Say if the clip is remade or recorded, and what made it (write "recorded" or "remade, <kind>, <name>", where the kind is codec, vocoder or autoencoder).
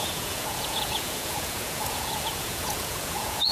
remade, vocoder, Vocos